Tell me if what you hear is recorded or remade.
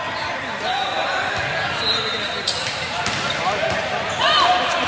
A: recorded